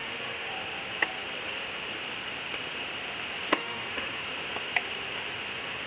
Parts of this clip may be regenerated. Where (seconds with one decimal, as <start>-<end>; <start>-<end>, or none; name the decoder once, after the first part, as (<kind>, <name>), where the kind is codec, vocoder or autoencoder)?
0.0-0.5 (autoencoder, DAC-VAE); 3.5-4.2